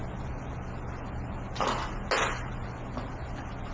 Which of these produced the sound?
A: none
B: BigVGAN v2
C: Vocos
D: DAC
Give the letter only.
A